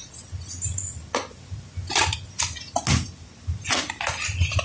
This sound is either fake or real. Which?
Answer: real